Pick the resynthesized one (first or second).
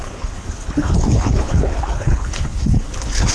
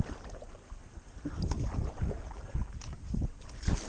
first